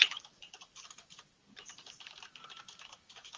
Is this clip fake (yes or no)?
yes